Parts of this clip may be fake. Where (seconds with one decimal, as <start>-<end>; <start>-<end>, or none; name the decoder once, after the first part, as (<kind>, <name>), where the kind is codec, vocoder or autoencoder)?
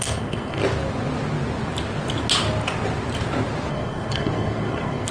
0.0-0.6 (codec, SNAC); 3.7-5.1